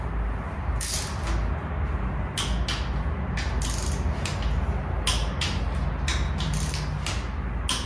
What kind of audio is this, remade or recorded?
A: recorded